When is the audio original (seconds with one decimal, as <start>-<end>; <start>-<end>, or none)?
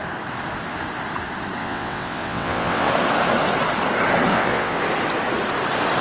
0.0-1.6; 2.9-4.3; 4.8-6.0